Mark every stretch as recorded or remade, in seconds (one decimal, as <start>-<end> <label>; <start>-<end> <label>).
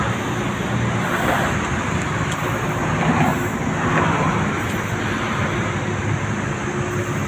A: 0.0-7.3 recorded